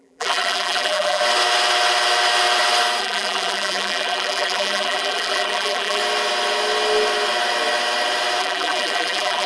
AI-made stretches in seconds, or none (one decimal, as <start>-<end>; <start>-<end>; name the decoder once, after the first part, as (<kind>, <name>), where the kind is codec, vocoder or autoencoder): 0.0-1.2 (vocoder, BigVGAN v2); 3.0-6.0; 8.4-9.5